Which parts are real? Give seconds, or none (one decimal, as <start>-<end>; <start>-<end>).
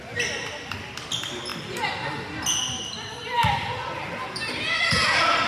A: 0.0-5.5